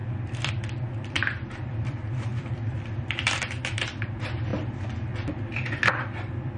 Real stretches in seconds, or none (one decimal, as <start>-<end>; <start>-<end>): 4.5-5.9